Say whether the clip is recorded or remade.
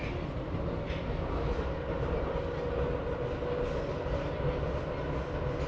recorded